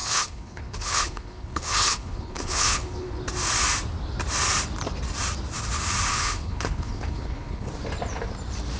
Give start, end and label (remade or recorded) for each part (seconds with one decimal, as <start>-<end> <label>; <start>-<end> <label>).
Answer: 0.0-3.2 remade; 3.2-6.1 recorded; 6.1-7.7 remade; 7.7-8.8 recorded